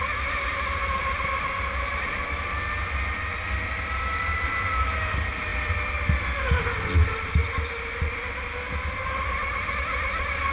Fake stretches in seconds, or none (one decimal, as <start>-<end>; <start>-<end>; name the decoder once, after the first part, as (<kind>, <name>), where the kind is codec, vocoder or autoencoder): none